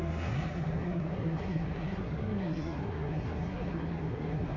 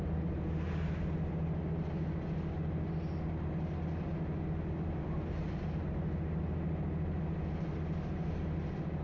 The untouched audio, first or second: second